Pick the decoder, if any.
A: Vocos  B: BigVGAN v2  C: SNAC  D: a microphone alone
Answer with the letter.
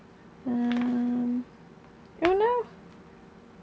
D